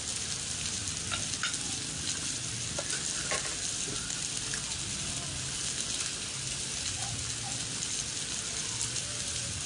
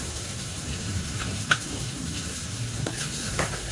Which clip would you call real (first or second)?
first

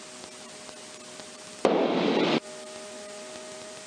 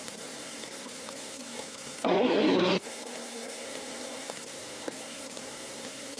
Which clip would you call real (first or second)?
first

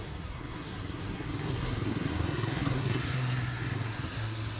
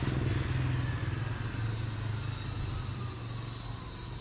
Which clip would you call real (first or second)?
second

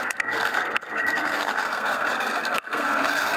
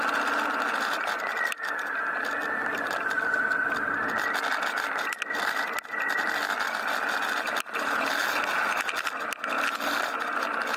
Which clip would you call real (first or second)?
second